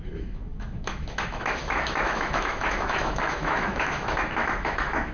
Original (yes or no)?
no